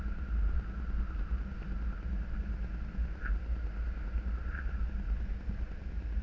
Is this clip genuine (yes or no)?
yes